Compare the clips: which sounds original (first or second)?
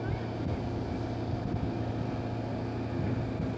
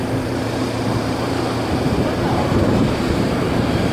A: first